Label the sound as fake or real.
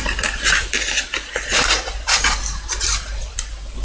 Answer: fake